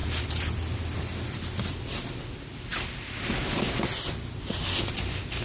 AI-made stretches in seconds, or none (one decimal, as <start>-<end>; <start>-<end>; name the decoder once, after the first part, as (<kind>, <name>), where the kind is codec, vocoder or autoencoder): none